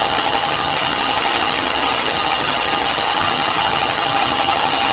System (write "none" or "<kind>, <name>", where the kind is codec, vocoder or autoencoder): vocoder, HiFi-GAN